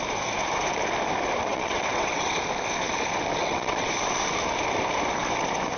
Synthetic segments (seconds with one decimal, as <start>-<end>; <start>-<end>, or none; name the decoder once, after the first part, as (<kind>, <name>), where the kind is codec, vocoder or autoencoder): 1.5-2.3 (vocoder, WaveNeXt); 3.4-3.9